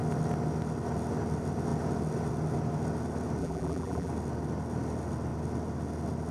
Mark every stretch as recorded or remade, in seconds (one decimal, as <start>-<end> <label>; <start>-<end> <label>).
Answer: 0.0-3.4 recorded; 3.4-4.1 remade; 4.1-6.3 recorded